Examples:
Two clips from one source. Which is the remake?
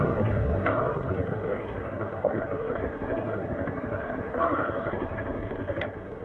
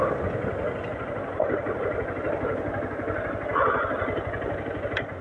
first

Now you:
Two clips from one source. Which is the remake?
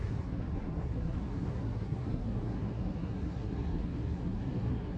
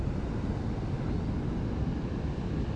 first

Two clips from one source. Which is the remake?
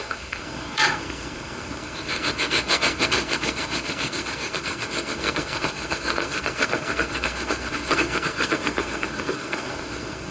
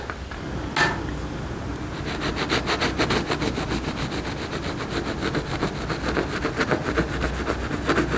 first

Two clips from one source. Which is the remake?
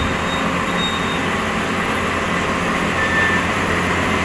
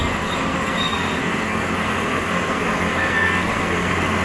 second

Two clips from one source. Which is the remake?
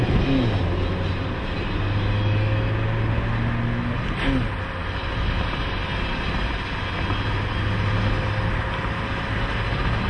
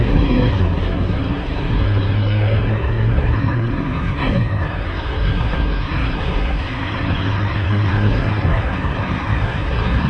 second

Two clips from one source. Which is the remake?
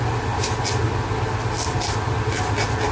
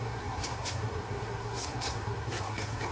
second